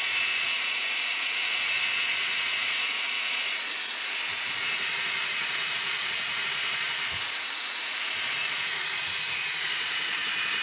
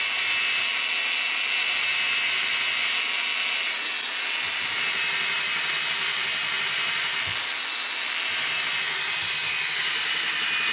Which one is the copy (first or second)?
first